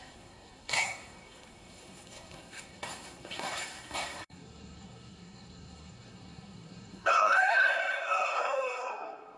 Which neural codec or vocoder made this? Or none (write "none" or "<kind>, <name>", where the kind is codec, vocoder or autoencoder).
codec, SNAC